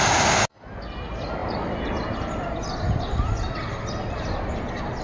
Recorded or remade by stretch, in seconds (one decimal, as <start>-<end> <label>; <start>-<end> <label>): 0.0-5.0 recorded